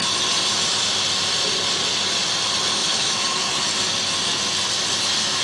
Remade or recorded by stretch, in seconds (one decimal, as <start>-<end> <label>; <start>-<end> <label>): 0.0-2.8 recorded; 2.8-3.7 remade; 3.7-5.4 recorded